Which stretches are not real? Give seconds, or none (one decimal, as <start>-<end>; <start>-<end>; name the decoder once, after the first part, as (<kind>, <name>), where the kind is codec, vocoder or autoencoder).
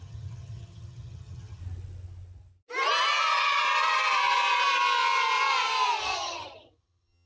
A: 0.0-1.6 (vocoder, HiFi-GAN); 6.0-7.3